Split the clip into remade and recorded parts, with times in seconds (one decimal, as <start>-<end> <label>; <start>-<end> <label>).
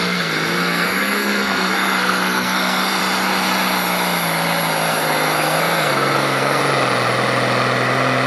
0.0-3.0 remade; 3.0-4.9 recorded; 4.9-6.6 remade; 6.6-8.3 recorded